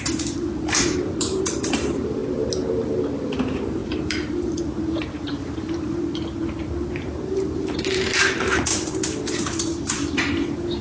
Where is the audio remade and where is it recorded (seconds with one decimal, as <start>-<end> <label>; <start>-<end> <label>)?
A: 0.0-2.2 remade; 2.2-3.1 recorded; 3.1-6.4 remade; 6.4-6.9 recorded; 6.9-8.7 remade; 8.7-9.3 recorded; 9.3-10.8 remade